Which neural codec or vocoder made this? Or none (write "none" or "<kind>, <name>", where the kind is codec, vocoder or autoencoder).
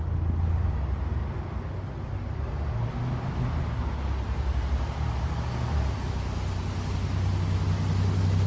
none